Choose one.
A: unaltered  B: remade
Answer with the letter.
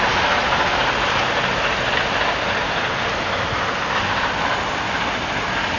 A